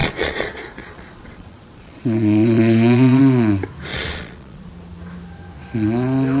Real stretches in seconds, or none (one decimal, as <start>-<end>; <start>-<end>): 3.2-3.9; 4.7-6.4